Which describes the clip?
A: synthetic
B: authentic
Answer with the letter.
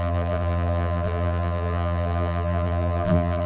A